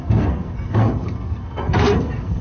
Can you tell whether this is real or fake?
fake